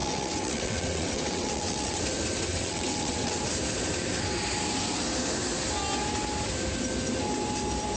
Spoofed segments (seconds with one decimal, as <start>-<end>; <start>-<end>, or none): 0.0-2.0; 2.5-3.4